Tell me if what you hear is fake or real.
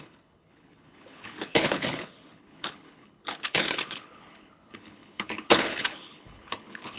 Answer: fake